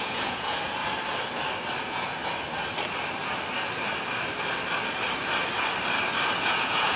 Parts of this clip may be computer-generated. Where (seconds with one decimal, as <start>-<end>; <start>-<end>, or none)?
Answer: 0.0-0.8; 1.8-2.2; 6.4-7.0